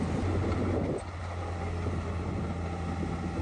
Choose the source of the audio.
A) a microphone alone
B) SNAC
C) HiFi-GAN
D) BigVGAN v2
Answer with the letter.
A